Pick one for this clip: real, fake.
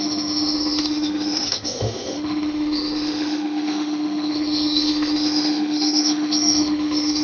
fake